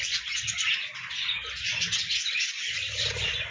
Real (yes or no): yes